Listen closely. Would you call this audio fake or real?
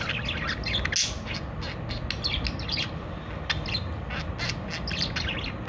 real